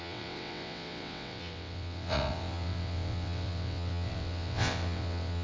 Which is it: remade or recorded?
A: remade